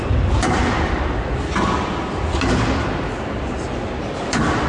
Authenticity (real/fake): real